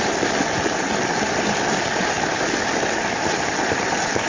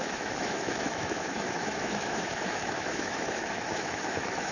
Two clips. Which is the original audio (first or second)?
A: first